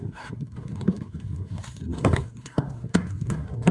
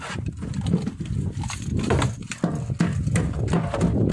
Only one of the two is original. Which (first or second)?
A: second